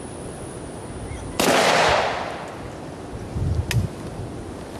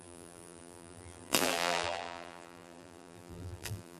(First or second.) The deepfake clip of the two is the second